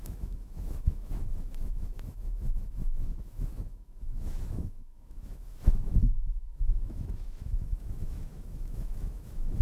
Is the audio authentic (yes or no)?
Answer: no